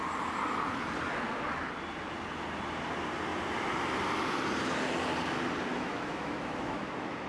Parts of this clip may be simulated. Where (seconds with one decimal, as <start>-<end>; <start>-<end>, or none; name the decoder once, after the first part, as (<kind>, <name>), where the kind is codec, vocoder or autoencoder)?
5.7-7.3 (autoencoder, DAC-VAE)